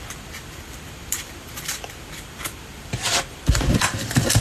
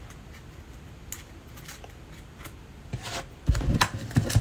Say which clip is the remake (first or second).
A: first